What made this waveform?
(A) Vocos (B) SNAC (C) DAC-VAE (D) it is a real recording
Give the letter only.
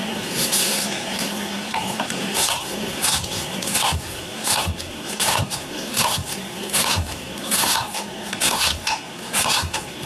B